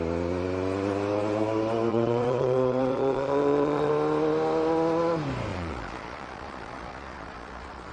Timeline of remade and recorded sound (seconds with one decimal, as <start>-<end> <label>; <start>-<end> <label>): 0.0-1.9 recorded; 1.9-3.9 remade; 3.9-5.5 recorded; 5.5-7.9 remade